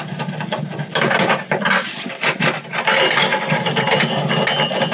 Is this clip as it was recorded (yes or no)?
yes